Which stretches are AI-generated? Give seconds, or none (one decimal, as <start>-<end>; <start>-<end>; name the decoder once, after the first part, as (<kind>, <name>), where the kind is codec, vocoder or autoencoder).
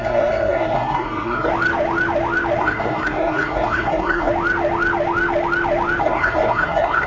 0.0-1.5 (codec, SNAC); 2.6-4.3; 6.0-7.1